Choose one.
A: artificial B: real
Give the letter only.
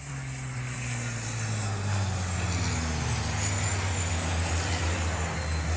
B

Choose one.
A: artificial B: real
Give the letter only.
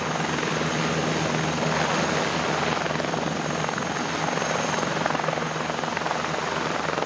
B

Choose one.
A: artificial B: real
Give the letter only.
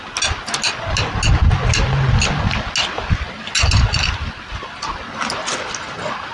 B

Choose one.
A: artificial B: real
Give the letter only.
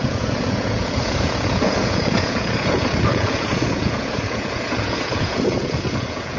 A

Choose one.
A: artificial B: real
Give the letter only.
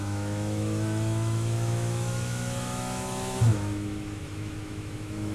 A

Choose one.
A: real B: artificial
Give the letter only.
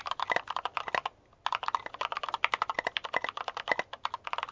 A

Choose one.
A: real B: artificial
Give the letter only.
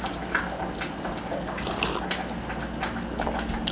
A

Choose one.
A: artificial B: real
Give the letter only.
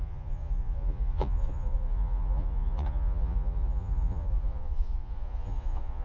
A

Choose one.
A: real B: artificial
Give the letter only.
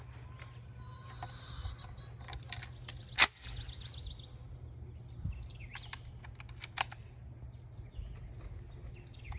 A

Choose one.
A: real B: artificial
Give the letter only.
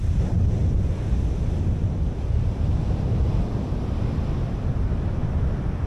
A